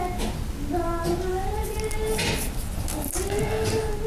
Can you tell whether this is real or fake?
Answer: real